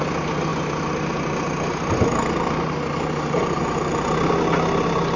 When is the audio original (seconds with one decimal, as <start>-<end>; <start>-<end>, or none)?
0.0-5.2